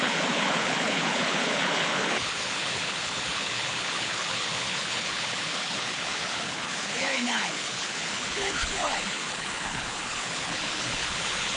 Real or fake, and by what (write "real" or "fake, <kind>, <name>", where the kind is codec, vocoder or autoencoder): fake, codec, HILCodec